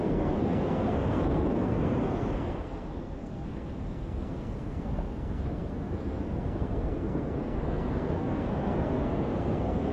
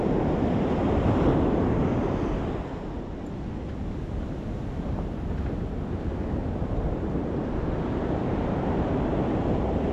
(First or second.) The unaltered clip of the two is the second